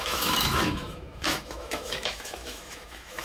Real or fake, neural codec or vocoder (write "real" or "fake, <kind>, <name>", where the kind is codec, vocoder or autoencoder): fake, autoencoder, DAC-VAE